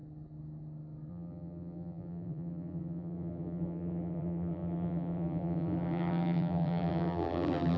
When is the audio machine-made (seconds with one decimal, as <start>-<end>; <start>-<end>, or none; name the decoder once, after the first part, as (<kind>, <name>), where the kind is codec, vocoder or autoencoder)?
1.1-7.8 (vocoder, BigVGAN v2)